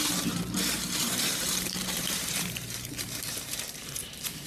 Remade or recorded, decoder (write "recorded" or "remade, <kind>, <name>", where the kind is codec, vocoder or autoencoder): remade, vocoder, BigVGAN v2